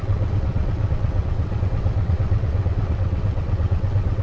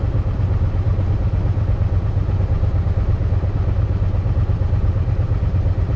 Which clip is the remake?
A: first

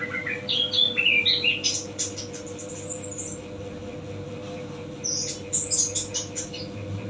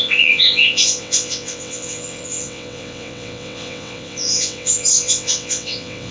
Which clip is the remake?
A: second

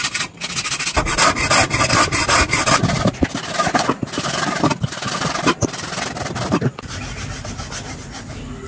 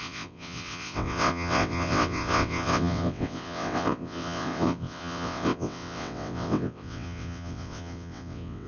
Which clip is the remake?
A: second